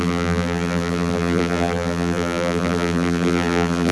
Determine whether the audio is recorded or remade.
remade